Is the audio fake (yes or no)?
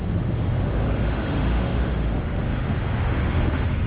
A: yes